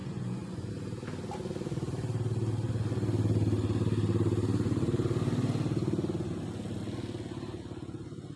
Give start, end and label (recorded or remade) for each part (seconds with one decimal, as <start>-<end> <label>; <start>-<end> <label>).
0.0-0.7 remade; 0.7-8.4 recorded